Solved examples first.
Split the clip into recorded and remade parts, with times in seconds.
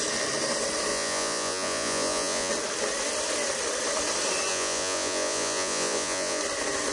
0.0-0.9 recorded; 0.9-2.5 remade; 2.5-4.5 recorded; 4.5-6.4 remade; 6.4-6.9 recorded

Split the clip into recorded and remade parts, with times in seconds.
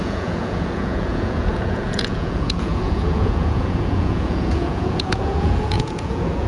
0.0-6.5 remade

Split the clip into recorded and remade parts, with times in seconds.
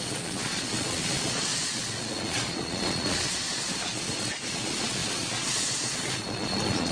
0.0-6.9 remade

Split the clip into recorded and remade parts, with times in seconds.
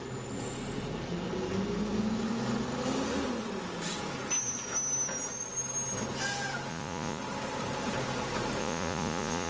0.0-6.7 recorded; 6.7-7.2 remade; 7.2-8.6 recorded; 8.6-9.5 remade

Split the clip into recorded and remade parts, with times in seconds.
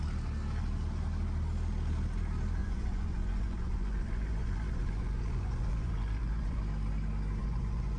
0.0-2.6 recorded; 2.6-6.6 remade; 6.6-7.4 recorded; 7.4-8.0 remade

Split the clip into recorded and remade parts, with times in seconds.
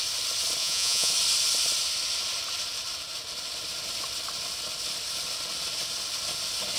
0.0-0.6 recorded; 0.6-1.1 remade; 1.1-6.8 recorded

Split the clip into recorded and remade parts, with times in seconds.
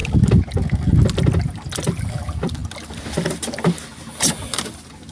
0.0-5.1 recorded